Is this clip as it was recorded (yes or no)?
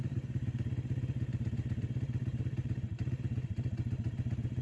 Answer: no